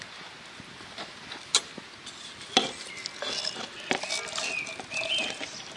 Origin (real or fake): real